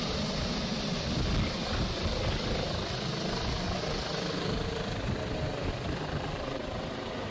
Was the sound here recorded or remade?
recorded